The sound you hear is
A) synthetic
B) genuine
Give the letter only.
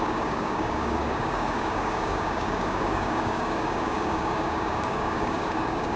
A